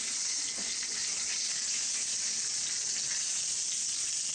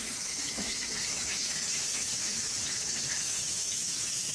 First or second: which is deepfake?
second